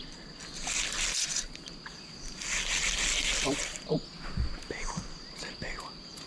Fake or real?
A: real